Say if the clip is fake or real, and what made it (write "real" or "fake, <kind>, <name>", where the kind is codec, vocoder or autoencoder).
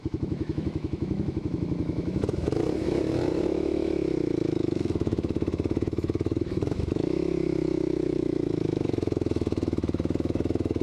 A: fake, autoencoder, DAC-VAE